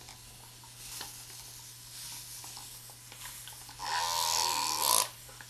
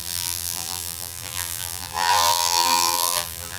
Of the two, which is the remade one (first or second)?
second